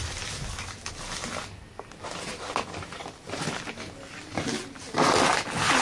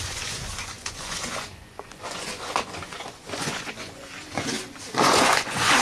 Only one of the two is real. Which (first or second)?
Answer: first